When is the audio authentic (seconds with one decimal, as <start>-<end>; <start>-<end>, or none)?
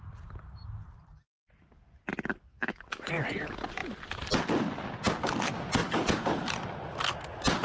0.0-2.5; 3.1-7.6